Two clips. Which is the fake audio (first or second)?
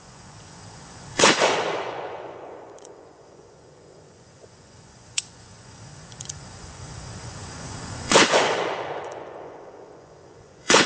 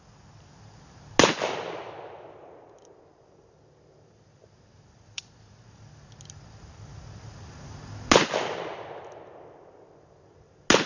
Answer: first